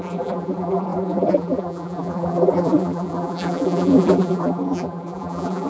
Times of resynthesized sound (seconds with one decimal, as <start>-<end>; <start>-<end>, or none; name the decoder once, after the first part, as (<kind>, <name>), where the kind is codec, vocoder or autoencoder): 0.0-5.7 (vocoder, BigVGAN v2)